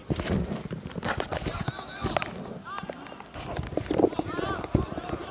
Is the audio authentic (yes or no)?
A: yes